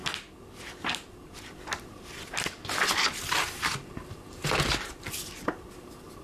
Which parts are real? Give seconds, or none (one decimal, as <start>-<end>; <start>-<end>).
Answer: 0.0-6.2